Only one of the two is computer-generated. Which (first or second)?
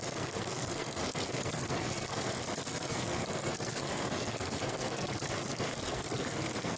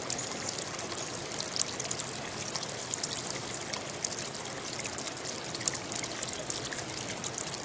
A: first